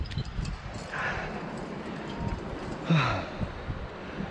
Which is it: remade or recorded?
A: recorded